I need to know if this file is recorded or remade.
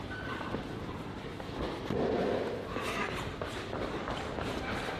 recorded